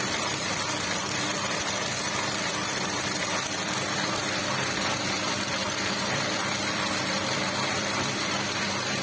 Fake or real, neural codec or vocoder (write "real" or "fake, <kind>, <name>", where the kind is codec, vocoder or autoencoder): fake, vocoder, BigVGAN v2